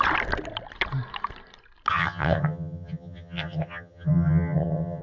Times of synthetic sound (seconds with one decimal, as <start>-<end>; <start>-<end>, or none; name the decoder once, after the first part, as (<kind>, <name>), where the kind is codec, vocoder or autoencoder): 1.9-5.0 (vocoder, HiFi-GAN)